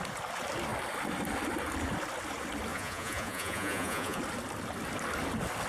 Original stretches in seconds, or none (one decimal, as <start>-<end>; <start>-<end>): 0.0-2.7; 4.2-5.7